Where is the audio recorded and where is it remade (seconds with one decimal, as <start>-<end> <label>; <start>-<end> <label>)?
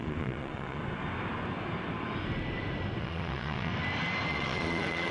0.0-0.8 remade; 0.8-3.0 recorded; 3.0-3.7 remade; 3.7-4.3 recorded; 4.3-5.1 remade